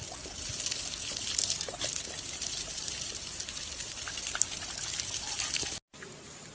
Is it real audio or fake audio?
real